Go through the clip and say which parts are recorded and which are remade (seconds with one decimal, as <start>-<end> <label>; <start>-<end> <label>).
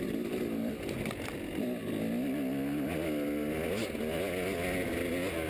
0.0-5.5 recorded